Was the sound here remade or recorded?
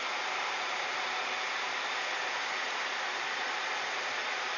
remade